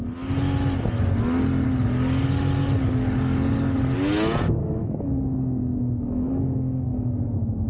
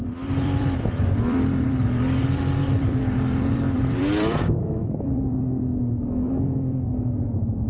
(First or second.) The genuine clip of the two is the first